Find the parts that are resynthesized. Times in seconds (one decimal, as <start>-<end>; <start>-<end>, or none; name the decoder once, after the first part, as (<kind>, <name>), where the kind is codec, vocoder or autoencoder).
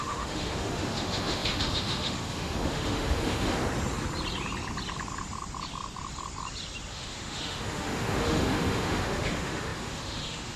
0.0-3.6 (autoencoder, DAC-VAE); 6.9-10.6